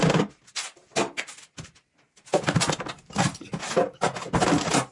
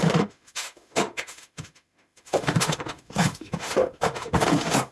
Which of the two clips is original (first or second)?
first